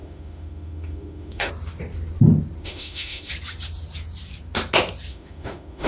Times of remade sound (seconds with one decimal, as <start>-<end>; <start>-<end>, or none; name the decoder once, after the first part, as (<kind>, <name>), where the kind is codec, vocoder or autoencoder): 0.0-1.5 (autoencoder, DAC-VAE); 2.6-3.3; 5.1-5.9